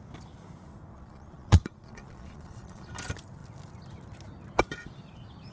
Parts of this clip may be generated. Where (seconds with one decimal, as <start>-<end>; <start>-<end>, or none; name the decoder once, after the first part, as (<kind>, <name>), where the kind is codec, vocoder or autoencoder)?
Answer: 0.9-2.9 (vocoder, Vocos)